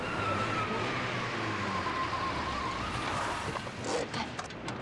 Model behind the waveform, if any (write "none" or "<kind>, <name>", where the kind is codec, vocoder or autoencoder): none